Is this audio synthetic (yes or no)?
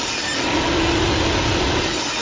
no